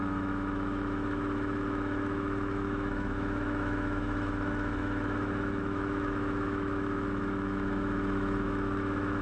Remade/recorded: remade